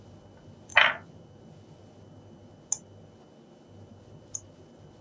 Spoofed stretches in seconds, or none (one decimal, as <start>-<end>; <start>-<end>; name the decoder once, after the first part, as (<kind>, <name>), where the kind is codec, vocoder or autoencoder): none